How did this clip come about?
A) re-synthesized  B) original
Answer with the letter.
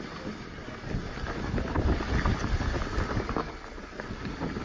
B